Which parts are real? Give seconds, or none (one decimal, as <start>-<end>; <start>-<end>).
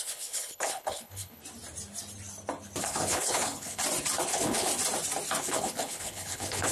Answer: 1.4-2.8; 3.8-4.3; 4.7-5.4